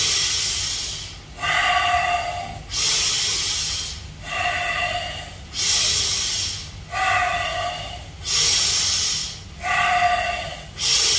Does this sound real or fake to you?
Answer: real